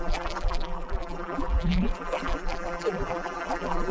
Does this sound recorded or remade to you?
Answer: remade